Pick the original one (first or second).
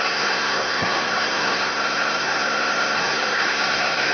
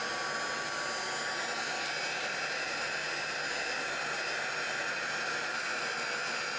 second